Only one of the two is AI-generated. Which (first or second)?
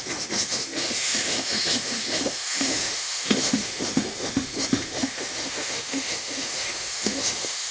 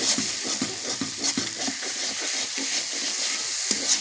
first